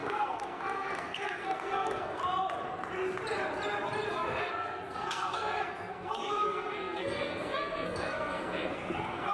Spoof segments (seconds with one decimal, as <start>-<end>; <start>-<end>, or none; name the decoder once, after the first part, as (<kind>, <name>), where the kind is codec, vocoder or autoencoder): 0.0-2.2 (codec, SNAC); 4.1-9.3